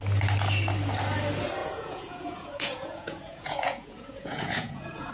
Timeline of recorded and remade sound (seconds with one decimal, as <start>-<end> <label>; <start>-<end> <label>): 0.0-1.6 recorded; 1.6-5.1 remade